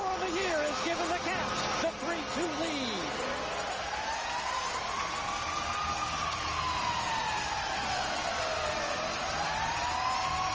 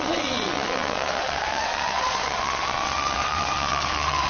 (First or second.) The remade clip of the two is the second